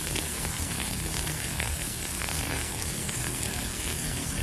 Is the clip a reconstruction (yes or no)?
yes